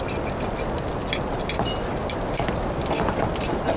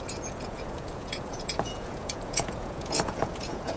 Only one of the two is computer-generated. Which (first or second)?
second